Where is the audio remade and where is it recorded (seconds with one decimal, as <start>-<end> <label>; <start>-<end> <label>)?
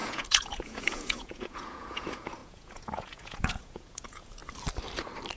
0.0-4.4 remade; 4.4-5.4 recorded